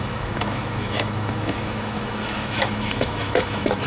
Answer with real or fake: fake